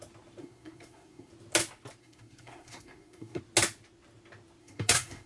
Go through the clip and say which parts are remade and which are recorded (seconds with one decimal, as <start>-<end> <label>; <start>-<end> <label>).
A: 0.0-0.4 recorded; 0.4-1.3 remade; 1.3-2.0 recorded; 2.0-3.4 remade; 3.4-4.6 recorded; 4.6-5.3 remade